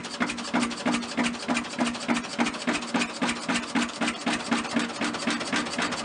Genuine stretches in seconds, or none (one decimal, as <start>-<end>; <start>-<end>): 0.0-6.0